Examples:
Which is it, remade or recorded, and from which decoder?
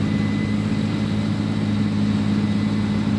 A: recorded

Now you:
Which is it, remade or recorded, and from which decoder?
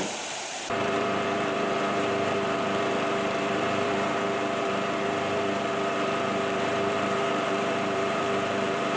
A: remade, vocoder, BigVGAN v2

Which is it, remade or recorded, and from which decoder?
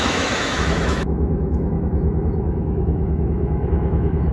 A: remade, autoencoder, DAC-VAE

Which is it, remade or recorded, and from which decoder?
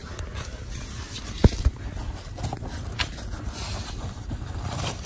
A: recorded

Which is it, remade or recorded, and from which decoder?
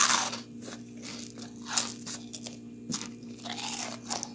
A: recorded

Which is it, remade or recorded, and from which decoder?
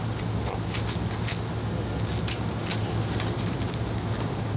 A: recorded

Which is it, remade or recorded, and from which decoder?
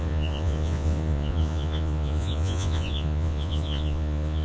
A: remade, vocoder, Vocos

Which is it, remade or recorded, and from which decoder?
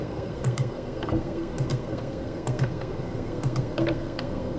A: remade, codec, SNAC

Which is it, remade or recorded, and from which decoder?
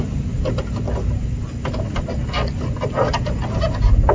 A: recorded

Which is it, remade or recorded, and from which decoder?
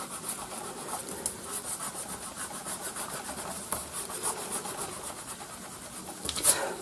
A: recorded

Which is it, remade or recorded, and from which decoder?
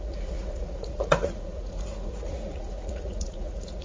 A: remade, vocoder, Vocos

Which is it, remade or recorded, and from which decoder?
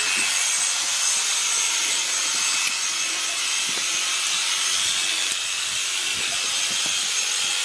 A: recorded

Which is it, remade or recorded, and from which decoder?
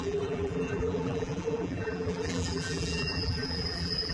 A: remade, vocoder, BigVGAN v2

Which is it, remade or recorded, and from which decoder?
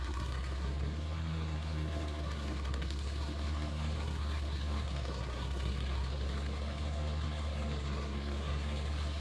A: remade, codec, SNAC